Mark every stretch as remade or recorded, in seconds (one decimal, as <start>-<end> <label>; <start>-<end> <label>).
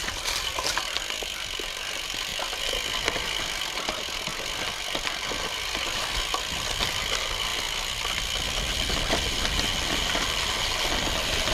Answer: 0.0-2.3 remade; 2.3-3.9 recorded; 3.9-4.3 remade; 4.3-6.6 recorded; 6.6-7.5 remade; 7.5-8.9 recorded; 8.9-11.5 remade